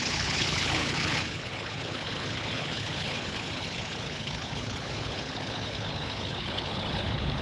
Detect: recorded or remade remade